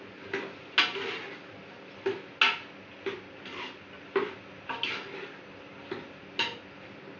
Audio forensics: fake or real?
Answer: real